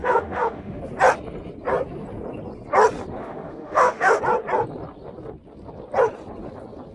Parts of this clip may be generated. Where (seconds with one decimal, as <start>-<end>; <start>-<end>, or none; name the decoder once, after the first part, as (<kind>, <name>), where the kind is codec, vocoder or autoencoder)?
0.0-0.8 (autoencoder, DAC-VAE); 3.2-4.2

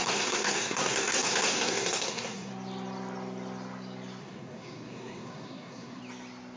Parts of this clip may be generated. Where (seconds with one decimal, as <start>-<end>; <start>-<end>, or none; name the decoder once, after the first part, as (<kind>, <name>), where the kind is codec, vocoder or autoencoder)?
0.0-2.5 (codec, SNAC); 4.2-6.0